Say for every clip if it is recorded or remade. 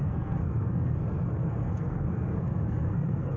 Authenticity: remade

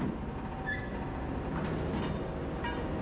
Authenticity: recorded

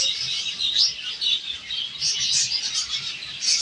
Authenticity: recorded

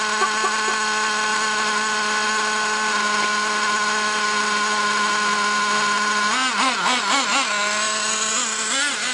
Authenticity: recorded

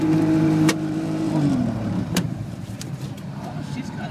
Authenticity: remade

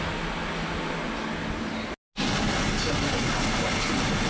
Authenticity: recorded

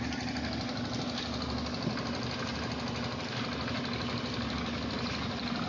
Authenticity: recorded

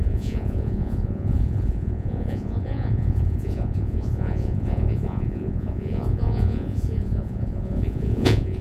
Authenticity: remade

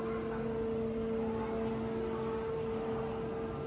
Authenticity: recorded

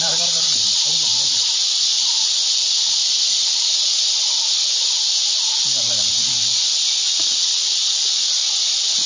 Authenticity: remade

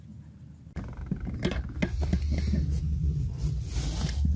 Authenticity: recorded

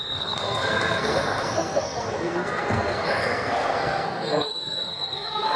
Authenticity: remade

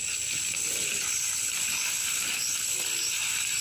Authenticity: recorded